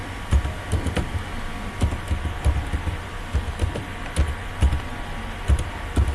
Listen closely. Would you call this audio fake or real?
real